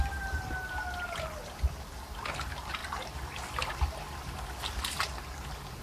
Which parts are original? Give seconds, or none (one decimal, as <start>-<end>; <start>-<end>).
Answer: 0.0-5.8